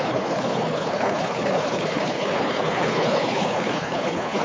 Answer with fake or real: fake